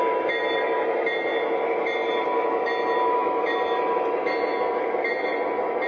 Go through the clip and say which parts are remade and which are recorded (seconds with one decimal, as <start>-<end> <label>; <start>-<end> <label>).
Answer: 0.0-5.9 recorded